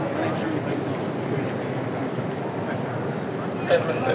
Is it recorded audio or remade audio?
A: recorded